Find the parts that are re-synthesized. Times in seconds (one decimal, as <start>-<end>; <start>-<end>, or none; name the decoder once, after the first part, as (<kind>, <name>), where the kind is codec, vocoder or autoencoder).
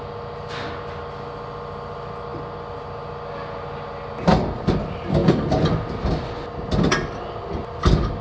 none